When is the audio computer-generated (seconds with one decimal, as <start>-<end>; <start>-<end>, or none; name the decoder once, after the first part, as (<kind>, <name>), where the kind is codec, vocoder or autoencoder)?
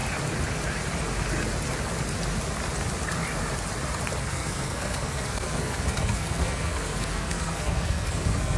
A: 4.2-8.6 (codec, SNAC)